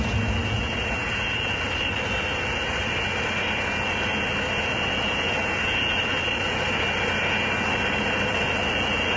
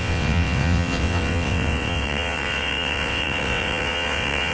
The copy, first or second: second